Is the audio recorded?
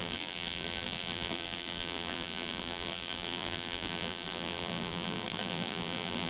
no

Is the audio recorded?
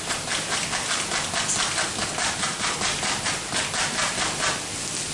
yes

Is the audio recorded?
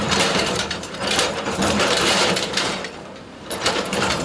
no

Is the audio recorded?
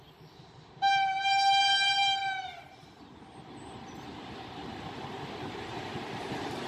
no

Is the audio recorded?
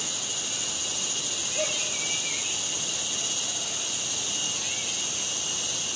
yes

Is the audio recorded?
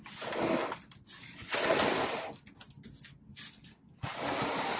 yes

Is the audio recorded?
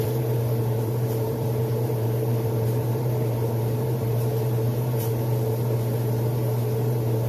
no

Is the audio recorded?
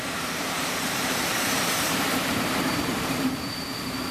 no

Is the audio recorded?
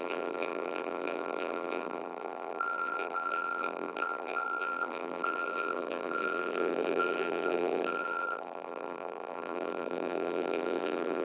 no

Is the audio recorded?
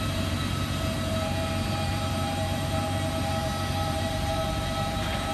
no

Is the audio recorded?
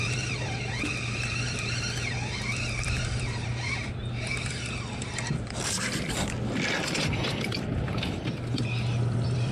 no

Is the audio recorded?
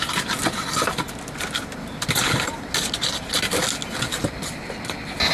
yes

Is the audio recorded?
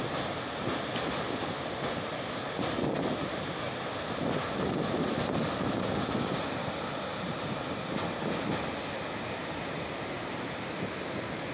yes